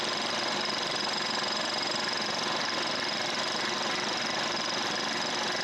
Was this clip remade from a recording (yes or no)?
no